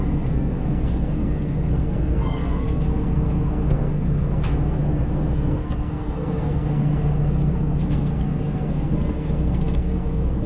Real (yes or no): no